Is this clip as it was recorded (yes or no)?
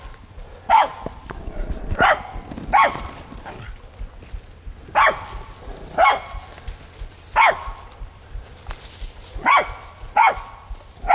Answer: yes